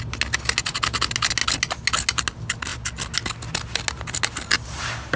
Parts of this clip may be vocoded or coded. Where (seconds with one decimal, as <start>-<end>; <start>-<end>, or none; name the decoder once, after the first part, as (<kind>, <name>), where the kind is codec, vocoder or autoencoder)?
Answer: none